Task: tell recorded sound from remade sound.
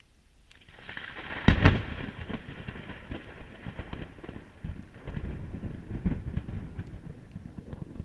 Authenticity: recorded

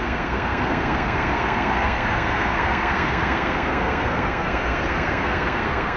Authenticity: remade